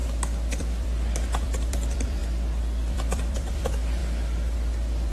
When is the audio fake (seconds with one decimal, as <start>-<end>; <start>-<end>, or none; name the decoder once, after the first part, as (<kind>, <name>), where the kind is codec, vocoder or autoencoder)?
0.6-2.2 (vocoder, BigVGAN v2); 2.9-4.0